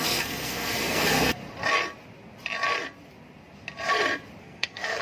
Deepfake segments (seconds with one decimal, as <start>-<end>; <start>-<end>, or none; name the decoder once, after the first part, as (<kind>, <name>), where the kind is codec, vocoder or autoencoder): 0.0-1.4 (codec, SNAC); 4.4-5.0